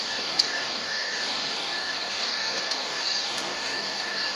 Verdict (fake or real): fake